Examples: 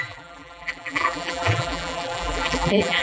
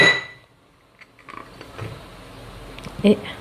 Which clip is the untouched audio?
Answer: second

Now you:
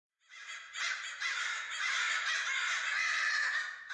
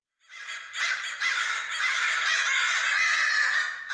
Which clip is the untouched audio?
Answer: second